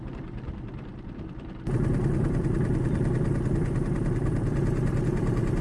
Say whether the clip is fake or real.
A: fake